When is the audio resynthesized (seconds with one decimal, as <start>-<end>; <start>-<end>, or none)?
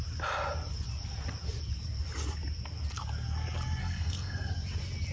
3.8-4.5